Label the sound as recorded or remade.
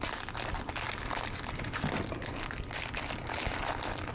recorded